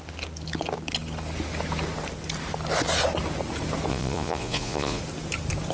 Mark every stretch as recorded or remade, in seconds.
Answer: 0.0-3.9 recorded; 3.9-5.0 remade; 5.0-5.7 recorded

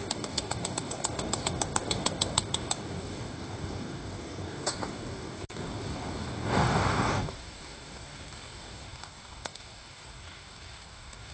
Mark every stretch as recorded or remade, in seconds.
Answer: 0.0-11.3 remade

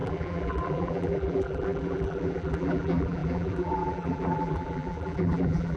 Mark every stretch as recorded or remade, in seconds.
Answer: 0.0-5.8 remade

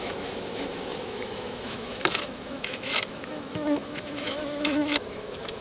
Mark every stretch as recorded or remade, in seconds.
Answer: 0.0-5.6 remade